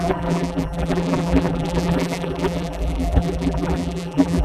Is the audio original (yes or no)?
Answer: no